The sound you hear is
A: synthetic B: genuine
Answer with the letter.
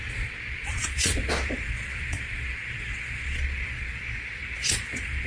A